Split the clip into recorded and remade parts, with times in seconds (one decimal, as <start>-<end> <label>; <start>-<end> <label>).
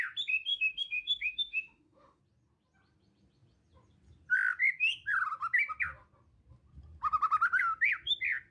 0.0-0.5 recorded; 0.5-2.2 remade; 2.2-8.5 recorded